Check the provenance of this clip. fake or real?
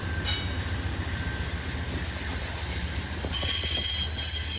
real